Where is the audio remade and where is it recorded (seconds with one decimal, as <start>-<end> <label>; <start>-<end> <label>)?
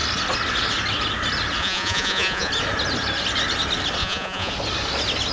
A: 0.0-1.6 recorded; 1.6-2.5 remade; 2.5-4.0 recorded; 4.0-4.5 remade; 4.5-5.3 recorded